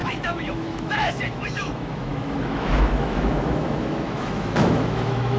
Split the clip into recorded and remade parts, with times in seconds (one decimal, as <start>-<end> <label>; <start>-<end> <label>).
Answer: 0.0-5.4 remade